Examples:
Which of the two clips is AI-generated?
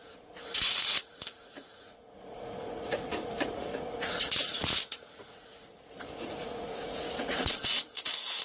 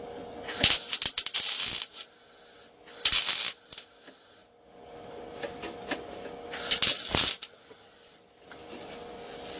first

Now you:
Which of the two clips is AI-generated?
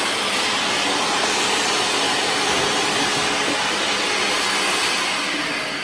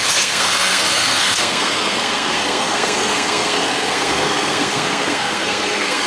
second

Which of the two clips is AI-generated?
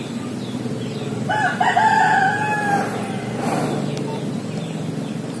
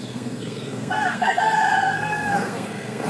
second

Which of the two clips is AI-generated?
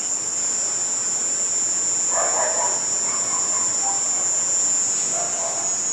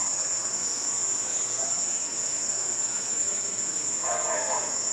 second